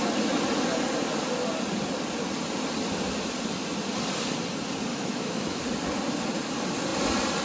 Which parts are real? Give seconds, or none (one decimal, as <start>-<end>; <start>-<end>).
0.0-4.9; 5.6-7.4